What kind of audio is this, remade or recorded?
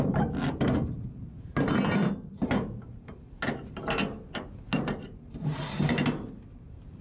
recorded